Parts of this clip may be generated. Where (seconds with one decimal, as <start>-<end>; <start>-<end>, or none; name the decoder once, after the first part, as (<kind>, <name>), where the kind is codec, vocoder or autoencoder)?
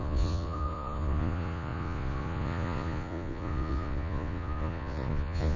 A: 0.0-5.6 (vocoder, Vocos)